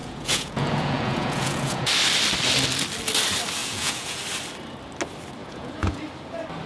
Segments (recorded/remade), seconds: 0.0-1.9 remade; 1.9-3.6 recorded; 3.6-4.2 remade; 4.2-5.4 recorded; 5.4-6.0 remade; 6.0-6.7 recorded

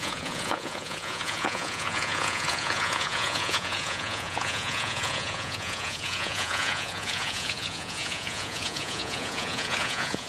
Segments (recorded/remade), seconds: 0.0-10.3 remade

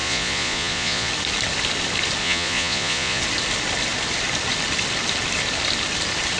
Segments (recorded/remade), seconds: 0.0-1.1 remade; 1.1-2.2 recorded; 2.2-3.2 remade; 3.2-6.4 recorded

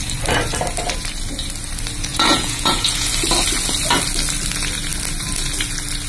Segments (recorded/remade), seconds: 0.0-2.1 recorded; 2.1-3.1 remade; 3.1-6.1 recorded

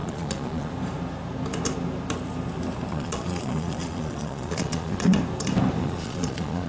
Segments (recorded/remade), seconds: 0.0-0.7 remade; 0.7-2.9 recorded; 2.9-5.2 remade; 5.2-5.8 recorded; 5.8-6.7 remade

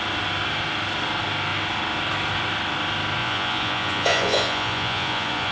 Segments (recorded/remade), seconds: 0.0-3.2 recorded; 3.2-5.5 remade

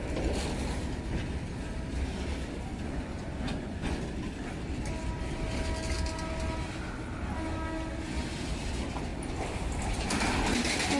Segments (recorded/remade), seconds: 0.0-2.7 recorded; 2.7-4.0 remade; 4.0-11.0 recorded